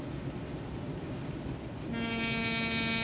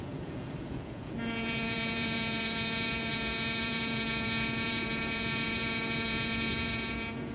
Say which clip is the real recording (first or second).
first